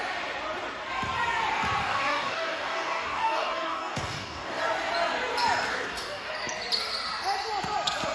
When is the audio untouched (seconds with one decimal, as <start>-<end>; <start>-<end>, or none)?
0.0-1.8; 4.6-5.7; 6.3-8.1